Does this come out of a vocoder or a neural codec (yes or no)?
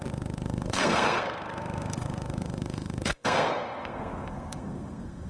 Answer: yes